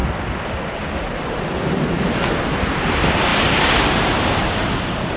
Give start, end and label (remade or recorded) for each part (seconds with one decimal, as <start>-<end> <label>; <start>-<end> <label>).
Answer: 0.0-2.5 recorded; 2.5-5.2 remade